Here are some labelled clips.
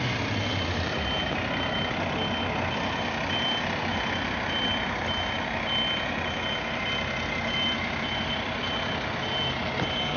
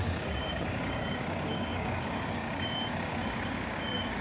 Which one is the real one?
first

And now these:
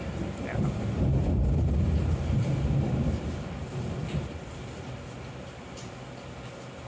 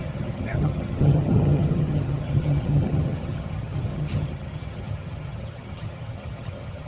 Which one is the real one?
first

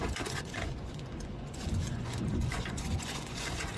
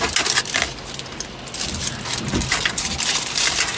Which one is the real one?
second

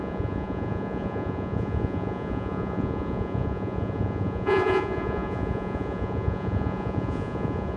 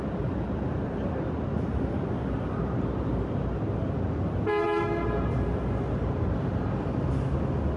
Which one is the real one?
second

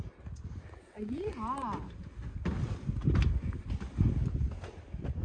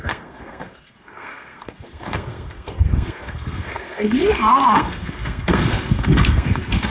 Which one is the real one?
first